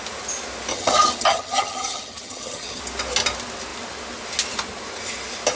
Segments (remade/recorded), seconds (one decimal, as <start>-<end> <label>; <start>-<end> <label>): 0.0-0.7 recorded; 0.7-2.8 remade; 2.8-5.6 recorded